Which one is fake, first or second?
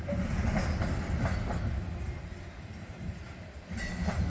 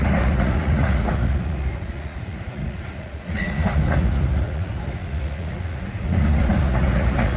second